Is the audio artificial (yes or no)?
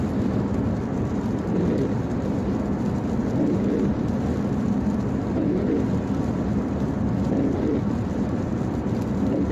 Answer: no